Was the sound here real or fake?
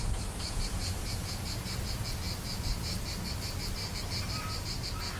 real